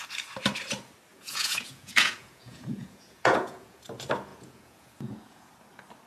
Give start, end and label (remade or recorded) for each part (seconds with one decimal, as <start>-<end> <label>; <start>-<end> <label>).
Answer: 0.0-1.1 recorded; 1.1-3.8 remade; 3.8-4.3 recorded; 4.3-5.5 remade; 5.5-6.1 recorded

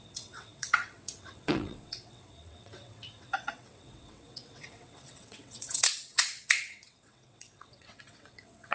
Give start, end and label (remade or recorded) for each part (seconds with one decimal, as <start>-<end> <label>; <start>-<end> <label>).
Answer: 0.0-8.7 remade

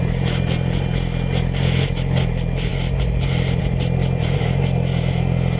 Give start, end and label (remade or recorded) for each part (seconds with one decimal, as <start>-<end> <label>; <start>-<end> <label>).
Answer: 0.0-5.6 recorded

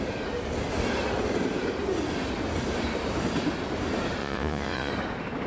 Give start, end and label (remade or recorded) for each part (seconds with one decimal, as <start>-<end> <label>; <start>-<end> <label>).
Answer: 0.0-4.2 recorded; 4.2-4.9 remade; 4.9-5.5 recorded

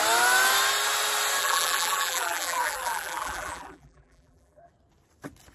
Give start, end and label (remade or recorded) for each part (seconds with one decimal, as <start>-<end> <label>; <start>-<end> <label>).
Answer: 0.0-1.4 recorded; 1.4-4.7 remade; 4.7-5.5 recorded

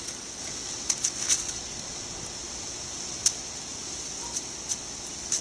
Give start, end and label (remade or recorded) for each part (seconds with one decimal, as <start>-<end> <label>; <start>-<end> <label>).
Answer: 0.0-5.4 recorded

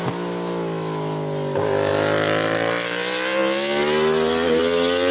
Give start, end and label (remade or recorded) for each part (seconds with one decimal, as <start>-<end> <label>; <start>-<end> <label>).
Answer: 0.0-5.1 recorded

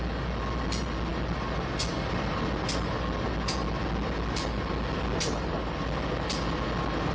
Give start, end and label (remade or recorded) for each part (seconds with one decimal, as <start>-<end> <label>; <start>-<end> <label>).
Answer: 0.0-7.1 recorded